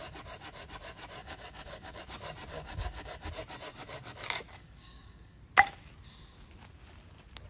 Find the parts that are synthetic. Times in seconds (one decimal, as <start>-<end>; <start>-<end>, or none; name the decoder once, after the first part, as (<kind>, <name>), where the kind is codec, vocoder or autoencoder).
1.2-2.0 (codec, DAC); 2.5-3.3; 4.6-5.4